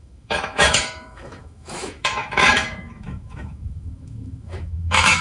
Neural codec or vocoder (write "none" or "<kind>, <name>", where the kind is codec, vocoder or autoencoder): autoencoder, DAC-VAE